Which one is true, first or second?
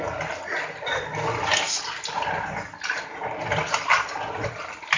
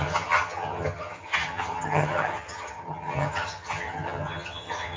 first